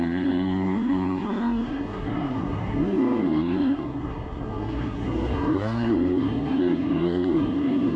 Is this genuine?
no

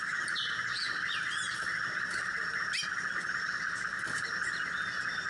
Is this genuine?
yes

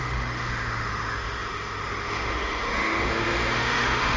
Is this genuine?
no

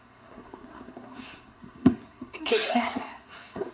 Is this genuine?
no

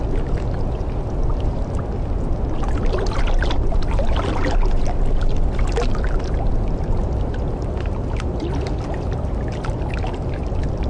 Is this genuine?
yes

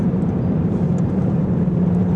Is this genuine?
no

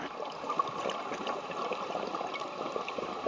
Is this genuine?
yes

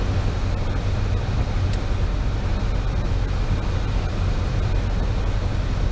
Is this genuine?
yes